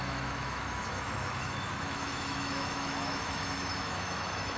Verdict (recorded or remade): remade